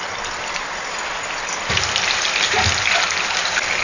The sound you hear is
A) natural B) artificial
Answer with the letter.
A